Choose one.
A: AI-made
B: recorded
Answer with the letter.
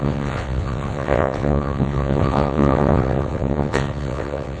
A